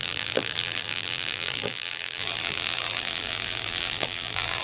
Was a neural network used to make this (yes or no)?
yes